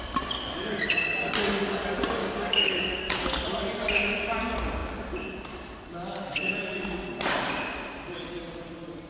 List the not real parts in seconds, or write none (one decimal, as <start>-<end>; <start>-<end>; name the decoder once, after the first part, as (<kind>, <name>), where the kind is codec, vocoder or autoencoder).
2.2-3.0 (codec, DAC)